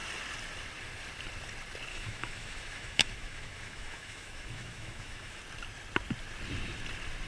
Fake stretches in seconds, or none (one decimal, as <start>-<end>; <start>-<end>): 1.9-5.4